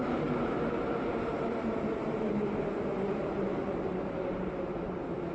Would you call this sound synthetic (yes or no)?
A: yes